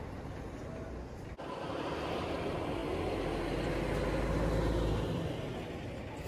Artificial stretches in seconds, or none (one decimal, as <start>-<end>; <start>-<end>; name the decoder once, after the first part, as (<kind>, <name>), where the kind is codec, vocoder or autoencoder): none